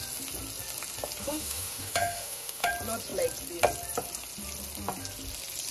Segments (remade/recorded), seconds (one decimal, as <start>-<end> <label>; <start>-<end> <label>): 0.0-1.2 recorded; 1.2-2.7 remade; 2.7-5.7 recorded